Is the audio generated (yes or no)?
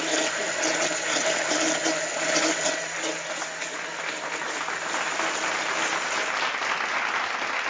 no